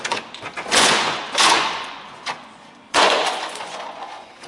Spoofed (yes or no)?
yes